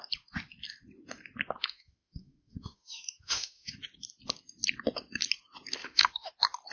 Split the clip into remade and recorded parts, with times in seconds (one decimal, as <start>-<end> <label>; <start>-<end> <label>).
0.0-1.6 recorded; 1.6-3.7 remade; 3.7-5.8 recorded; 5.8-6.3 remade; 6.3-6.7 recorded